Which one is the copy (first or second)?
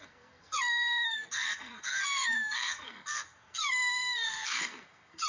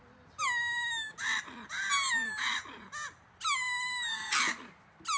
first